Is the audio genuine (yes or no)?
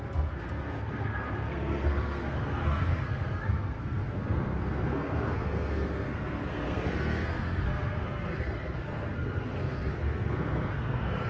no